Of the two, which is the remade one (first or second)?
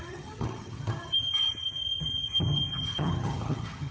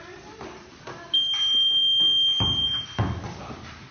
first